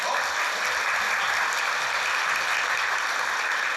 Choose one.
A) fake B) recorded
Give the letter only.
B